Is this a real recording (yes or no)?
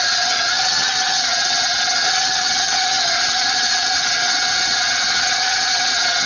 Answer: no